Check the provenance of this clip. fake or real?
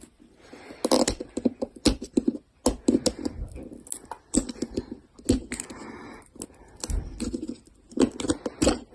real